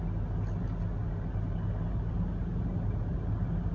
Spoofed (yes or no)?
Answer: no